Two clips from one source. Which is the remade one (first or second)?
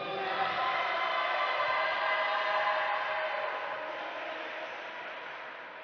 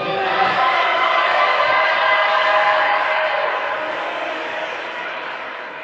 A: second